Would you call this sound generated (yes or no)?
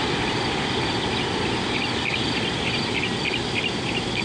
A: no